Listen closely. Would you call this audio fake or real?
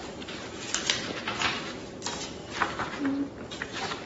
real